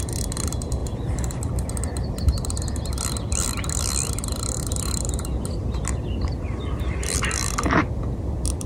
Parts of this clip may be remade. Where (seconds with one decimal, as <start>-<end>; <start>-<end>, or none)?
none